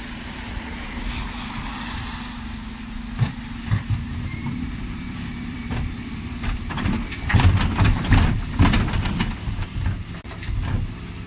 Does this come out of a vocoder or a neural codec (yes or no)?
yes